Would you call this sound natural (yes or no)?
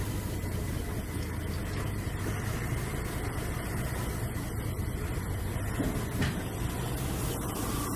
yes